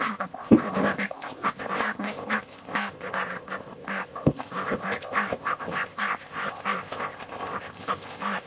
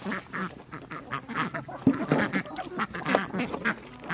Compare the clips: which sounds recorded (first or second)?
second